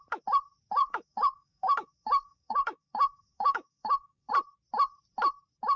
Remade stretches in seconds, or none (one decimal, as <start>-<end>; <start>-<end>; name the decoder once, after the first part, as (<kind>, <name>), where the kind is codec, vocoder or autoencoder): 0.8-4.3 (codec, DAC)